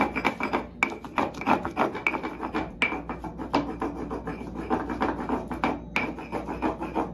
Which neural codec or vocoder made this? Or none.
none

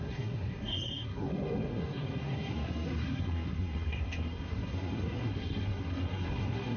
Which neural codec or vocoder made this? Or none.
codec, SNAC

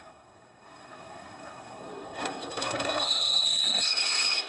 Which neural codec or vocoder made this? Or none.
codec, SNAC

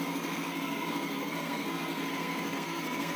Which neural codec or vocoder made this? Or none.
codec, SNAC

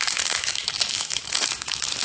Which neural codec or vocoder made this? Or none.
autoencoder, DAC-VAE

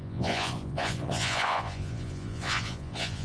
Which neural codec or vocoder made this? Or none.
vocoder, Vocos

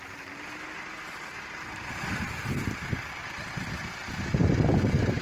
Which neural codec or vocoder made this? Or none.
none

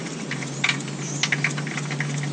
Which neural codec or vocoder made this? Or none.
none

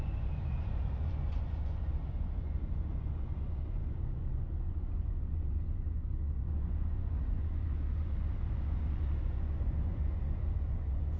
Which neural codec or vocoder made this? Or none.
vocoder, Vocos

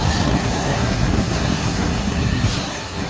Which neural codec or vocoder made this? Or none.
codec, SNAC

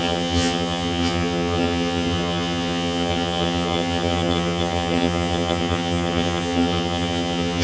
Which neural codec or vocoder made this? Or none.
vocoder, HiFi-GAN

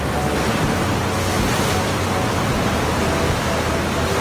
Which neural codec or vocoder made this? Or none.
none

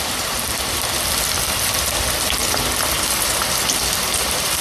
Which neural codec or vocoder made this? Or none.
none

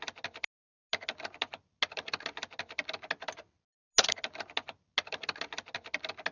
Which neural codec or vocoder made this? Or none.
none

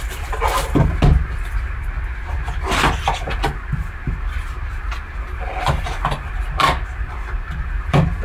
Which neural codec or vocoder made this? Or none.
none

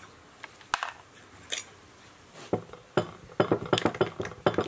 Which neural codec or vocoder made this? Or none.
none